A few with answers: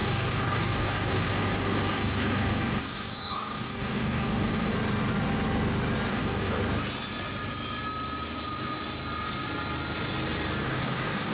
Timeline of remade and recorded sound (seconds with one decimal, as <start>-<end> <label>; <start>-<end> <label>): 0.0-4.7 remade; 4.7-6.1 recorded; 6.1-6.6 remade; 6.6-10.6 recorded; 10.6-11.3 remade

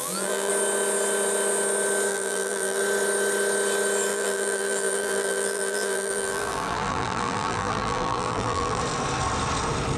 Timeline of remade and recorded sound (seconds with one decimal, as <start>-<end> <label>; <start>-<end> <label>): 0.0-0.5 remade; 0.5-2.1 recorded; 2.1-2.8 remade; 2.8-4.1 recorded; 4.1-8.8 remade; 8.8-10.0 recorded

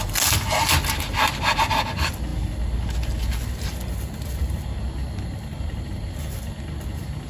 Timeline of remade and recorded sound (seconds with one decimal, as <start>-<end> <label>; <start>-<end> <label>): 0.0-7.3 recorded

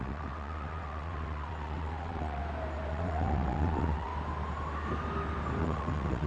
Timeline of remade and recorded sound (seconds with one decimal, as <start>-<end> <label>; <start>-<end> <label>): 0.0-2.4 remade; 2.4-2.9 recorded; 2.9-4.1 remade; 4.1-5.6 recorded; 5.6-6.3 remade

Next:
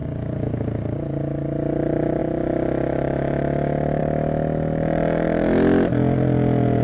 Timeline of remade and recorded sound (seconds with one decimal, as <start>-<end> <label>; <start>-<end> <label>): 0.0-0.8 remade; 0.8-6.8 recorded